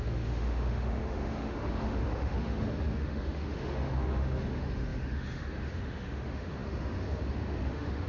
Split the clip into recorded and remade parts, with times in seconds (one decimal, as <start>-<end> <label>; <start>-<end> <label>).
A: 0.0-8.1 remade